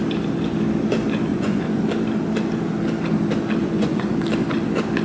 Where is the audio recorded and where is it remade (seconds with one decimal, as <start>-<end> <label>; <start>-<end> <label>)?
0.0-1.3 recorded; 1.3-1.8 remade; 1.8-3.6 recorded; 3.6-4.1 remade; 4.1-5.0 recorded